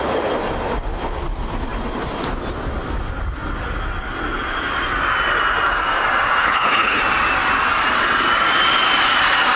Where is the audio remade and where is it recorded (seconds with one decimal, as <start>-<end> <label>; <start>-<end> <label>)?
0.0-6.4 recorded; 6.4-7.0 remade; 7.0-9.6 recorded